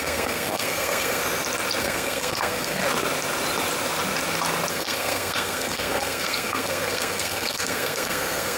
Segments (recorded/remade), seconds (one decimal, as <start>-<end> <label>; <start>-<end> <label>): 0.0-1.2 remade; 1.2-1.8 recorded; 1.8-2.8 remade; 2.8-4.7 recorded; 4.7-8.6 remade